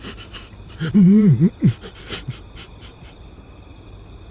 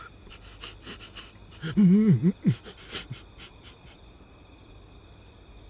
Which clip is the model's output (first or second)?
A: first